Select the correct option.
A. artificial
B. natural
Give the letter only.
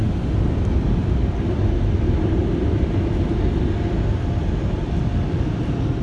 B